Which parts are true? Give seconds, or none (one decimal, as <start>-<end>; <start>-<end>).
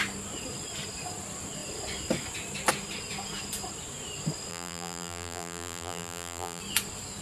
0.0-4.5; 6.6-7.2